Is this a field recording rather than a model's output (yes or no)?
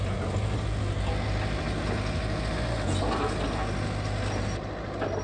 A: yes